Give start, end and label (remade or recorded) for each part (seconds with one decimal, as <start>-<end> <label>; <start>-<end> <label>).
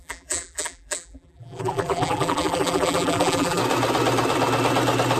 0.0-3.6 remade; 3.6-5.2 recorded